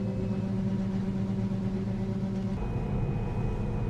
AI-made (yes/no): no